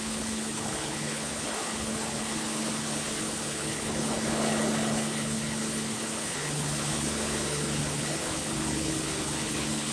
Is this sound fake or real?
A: fake